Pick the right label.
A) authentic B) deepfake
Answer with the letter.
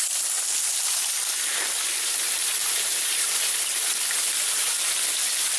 A